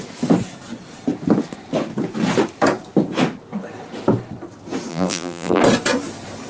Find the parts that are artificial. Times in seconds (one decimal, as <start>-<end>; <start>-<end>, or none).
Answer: 4.9-5.6